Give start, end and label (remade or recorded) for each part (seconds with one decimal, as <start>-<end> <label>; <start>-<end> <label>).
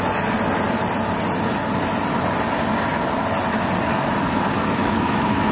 0.0-4.8 recorded; 4.8-5.5 remade